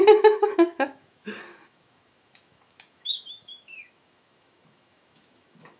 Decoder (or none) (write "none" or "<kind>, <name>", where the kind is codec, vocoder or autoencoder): autoencoder, DAC-VAE